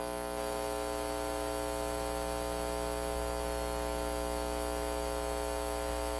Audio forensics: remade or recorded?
recorded